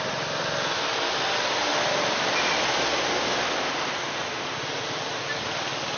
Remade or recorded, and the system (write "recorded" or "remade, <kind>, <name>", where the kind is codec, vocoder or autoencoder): recorded